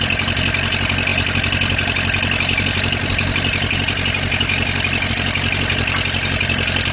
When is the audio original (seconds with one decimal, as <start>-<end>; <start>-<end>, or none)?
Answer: 0.0-6.9